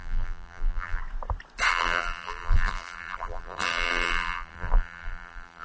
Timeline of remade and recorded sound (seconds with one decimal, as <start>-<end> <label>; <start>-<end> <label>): 0.0-1.0 remade; 1.0-1.7 recorded; 1.7-5.6 remade